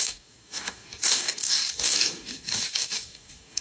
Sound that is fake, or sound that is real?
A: fake